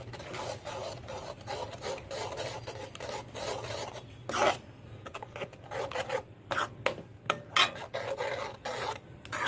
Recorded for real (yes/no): yes